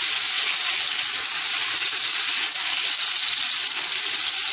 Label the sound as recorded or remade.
recorded